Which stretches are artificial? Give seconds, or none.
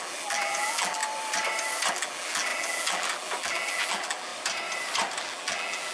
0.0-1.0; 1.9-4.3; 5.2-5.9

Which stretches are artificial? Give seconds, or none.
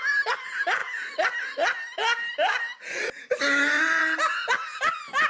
none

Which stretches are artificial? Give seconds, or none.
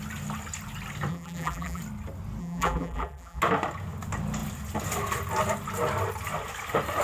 1.1-1.8; 2.4-3.4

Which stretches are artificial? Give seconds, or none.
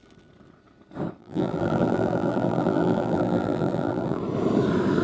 1.2-4.2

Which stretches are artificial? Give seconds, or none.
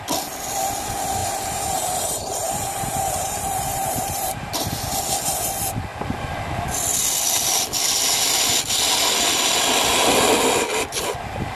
1.2-4.8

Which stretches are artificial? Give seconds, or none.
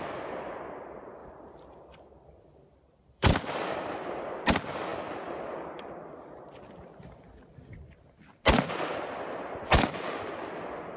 1.2-4.5; 4.9-5.9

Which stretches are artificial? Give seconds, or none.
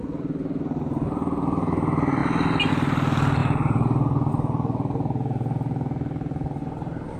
3.4-4.3; 6.6-7.2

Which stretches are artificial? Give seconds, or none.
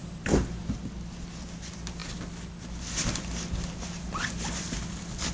0.0-0.8